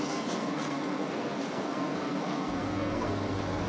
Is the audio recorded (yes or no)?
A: no